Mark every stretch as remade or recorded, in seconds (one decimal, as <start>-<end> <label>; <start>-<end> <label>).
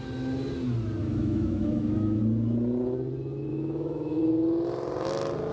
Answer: 0.0-1.0 recorded; 1.0-2.2 remade; 2.2-3.5 recorded; 3.5-4.2 remade; 4.2-5.5 recorded